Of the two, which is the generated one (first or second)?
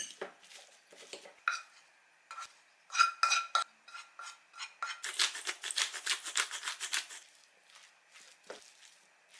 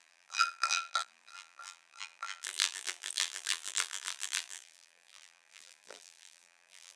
second